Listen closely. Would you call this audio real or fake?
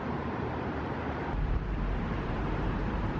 fake